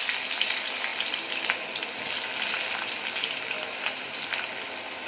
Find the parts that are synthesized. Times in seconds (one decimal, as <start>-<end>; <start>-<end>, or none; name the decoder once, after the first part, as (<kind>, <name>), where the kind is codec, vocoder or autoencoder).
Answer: none